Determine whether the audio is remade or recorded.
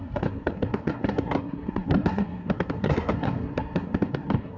remade